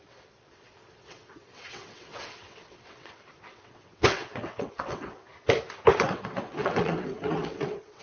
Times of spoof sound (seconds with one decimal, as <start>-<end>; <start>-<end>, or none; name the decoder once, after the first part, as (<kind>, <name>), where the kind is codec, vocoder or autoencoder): 0.0-5.2 (vocoder, WaveNeXt); 6.0-8.0